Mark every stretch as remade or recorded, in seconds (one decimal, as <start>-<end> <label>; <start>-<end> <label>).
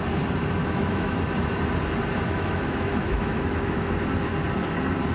0.0-0.6 recorded; 0.6-1.2 remade; 1.2-2.3 recorded; 2.3-3.9 remade; 3.9-5.1 recorded